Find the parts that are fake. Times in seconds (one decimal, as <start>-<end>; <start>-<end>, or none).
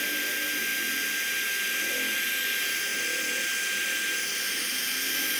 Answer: none